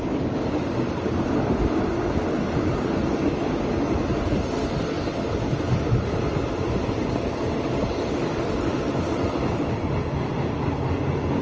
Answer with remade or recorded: recorded